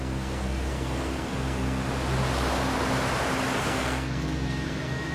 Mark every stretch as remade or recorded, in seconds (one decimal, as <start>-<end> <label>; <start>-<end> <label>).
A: 0.0-1.8 remade; 1.8-3.6 recorded; 3.6-5.1 remade